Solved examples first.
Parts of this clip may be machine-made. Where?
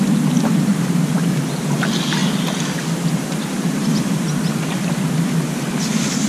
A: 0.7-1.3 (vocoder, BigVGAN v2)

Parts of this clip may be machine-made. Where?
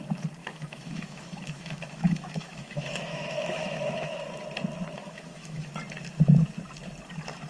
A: 0.4-4.2 (autoencoder, DAC-VAE); 4.9-5.7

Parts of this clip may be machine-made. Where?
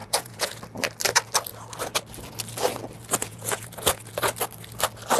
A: 0.0-0.6 (vocoder, Vocos); 3.2-4.1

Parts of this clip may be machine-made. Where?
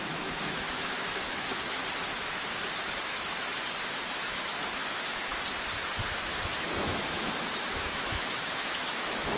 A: 0.0-1.8 (autoencoder, DAC-VAE); 2.8-5.3; 6.1-9.4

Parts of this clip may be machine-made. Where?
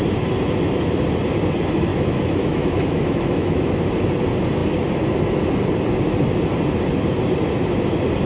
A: 1.9-3.7 (autoencoder, DAC-VAE)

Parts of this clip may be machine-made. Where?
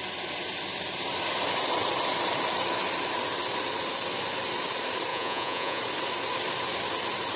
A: 5.1-5.8 (vocoder, Vocos)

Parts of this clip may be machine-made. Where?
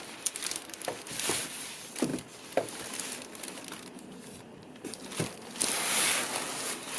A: none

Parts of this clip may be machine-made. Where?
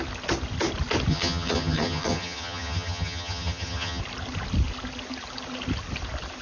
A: 1.1-4.0 (vocoder, HiFi-GAN)